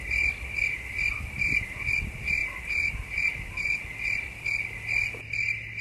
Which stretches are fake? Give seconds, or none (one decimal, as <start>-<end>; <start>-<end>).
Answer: none